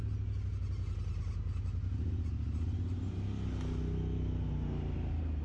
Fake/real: real